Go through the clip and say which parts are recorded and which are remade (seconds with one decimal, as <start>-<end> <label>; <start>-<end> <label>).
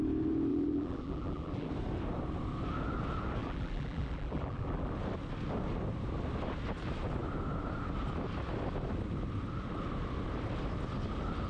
0.0-0.5 recorded; 0.5-1.7 remade; 1.7-3.4 recorded; 3.4-4.9 remade; 4.9-11.5 recorded